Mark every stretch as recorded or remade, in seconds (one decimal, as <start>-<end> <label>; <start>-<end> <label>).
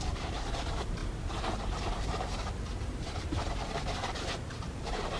0.0-5.2 remade